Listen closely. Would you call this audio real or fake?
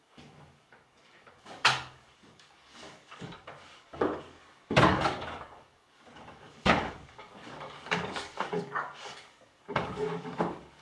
fake